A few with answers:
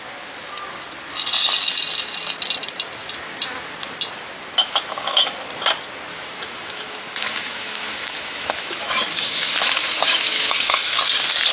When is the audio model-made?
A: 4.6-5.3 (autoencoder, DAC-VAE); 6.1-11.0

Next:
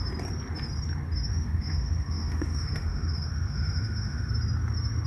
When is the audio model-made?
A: 1.3-4.3 (autoencoder, DAC-VAE)

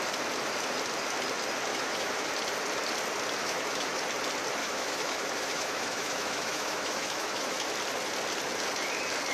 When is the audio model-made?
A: 1.7-2.3 (autoencoder, DAC-VAE); 3.4-4.0; 4.6-7.7

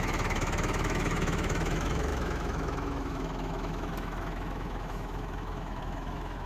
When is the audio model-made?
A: 0.0-6.5 (autoencoder, DAC-VAE)